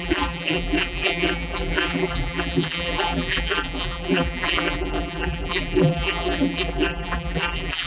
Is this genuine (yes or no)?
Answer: no